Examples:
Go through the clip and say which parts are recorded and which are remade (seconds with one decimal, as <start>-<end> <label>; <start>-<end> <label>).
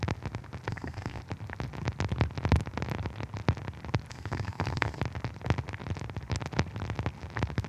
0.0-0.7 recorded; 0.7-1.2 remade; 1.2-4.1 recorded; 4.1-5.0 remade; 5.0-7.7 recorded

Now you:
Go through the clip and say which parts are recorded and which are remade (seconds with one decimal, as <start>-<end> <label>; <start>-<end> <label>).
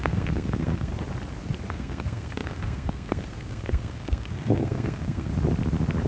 0.0-0.9 remade; 0.9-1.7 recorded; 1.7-5.3 remade; 5.3-6.1 recorded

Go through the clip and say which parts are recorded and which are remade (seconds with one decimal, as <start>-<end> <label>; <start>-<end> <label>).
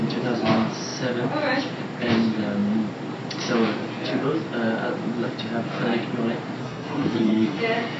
0.0-6.6 recorded; 6.6-7.6 remade; 7.6-8.0 recorded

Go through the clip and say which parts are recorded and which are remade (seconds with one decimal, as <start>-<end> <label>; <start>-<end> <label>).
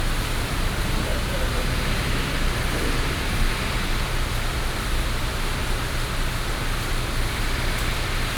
0.0-1.1 remade; 1.1-2.7 recorded; 2.7-8.4 remade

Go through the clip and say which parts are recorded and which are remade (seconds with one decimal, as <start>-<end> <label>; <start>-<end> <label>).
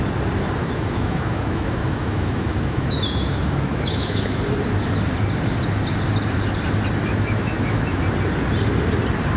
0.0-0.6 recorded; 0.6-4.4 remade; 4.4-7.1 recorded; 7.1-8.0 remade; 8.0-9.4 recorded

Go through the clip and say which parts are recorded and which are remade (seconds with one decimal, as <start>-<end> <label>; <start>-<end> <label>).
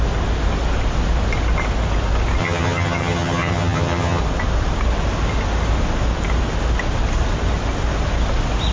0.0-2.4 recorded; 2.4-4.2 remade; 4.2-8.7 recorded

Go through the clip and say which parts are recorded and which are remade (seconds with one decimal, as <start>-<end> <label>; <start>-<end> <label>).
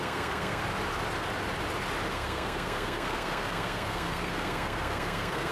0.0-0.6 remade; 0.6-2.1 recorded; 2.1-5.5 remade